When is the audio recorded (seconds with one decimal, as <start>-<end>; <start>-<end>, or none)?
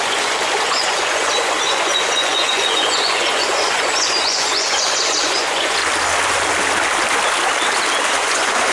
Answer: 5.8-8.1